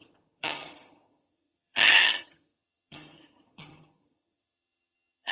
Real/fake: fake